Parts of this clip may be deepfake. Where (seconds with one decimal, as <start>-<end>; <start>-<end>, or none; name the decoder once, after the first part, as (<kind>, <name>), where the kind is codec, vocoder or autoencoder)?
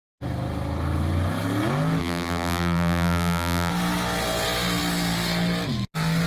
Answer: 2.0-3.7 (vocoder, BigVGAN v2)